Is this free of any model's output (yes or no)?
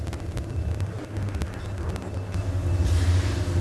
yes